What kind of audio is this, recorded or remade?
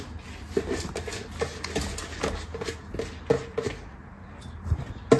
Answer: recorded